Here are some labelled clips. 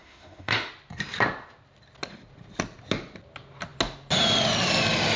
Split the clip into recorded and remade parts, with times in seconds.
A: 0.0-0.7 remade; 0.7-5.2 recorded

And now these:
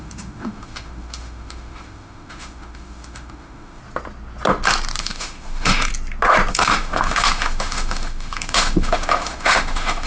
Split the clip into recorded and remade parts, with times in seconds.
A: 0.0-3.8 remade; 3.8-5.0 recorded; 5.0-5.9 remade; 5.9-6.5 recorded; 6.5-10.1 remade

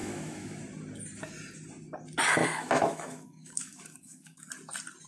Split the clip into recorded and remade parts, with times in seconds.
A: 0.0-0.6 remade; 0.6-2.4 recorded; 2.4-4.5 remade; 4.5-5.1 recorded

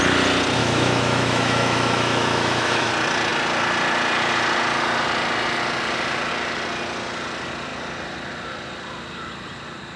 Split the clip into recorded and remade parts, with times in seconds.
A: 0.0-0.6 recorded; 0.6-2.9 remade; 2.9-10.0 recorded

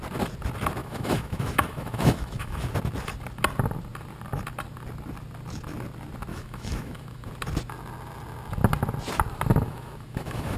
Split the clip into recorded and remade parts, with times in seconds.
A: 0.0-0.8 recorded; 0.8-2.7 remade; 2.7-6.3 recorded; 6.3-7.3 remade; 7.3-9.5 recorded; 9.5-10.6 remade

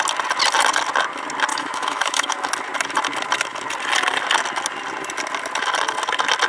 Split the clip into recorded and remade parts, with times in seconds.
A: 0.0-1.5 recorded; 1.5-2.5 remade; 2.5-6.5 recorded

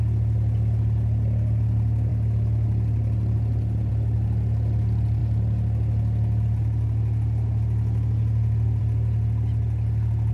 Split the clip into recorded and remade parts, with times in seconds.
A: 0.0-10.3 recorded

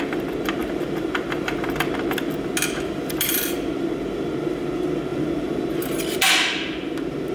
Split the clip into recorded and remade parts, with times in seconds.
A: 0.0-7.3 recorded